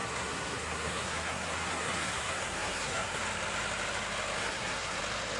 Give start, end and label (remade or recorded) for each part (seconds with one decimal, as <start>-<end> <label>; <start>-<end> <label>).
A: 0.0-3.2 remade; 3.2-4.4 recorded; 4.4-5.0 remade; 5.0-5.4 recorded